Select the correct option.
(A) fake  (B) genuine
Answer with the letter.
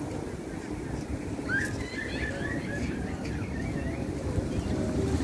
B